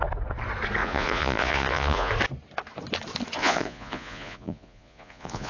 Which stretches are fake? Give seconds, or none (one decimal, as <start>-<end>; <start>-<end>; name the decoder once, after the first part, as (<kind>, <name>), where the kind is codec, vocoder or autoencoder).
0.8-2.1 (vocoder, Vocos); 3.4-5.5